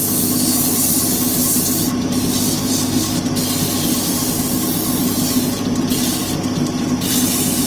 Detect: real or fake real